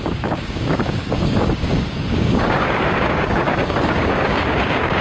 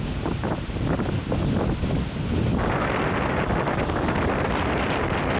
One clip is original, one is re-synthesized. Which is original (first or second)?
second